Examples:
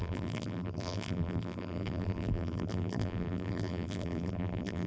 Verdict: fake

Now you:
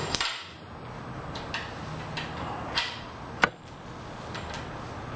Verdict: real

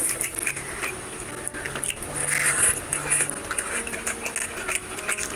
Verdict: real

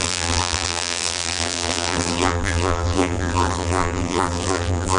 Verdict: fake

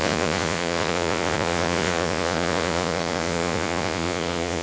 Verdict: fake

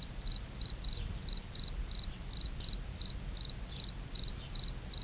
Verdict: real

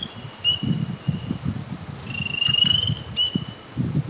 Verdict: real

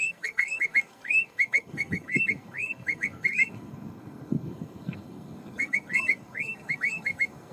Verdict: fake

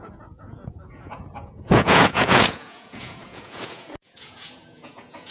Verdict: fake